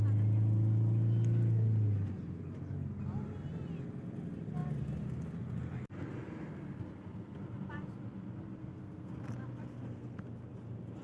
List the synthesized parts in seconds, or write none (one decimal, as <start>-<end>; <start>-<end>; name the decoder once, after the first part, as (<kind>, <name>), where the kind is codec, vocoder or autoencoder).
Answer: 8.6-9.2 (codec, SNAC); 9.7-10.3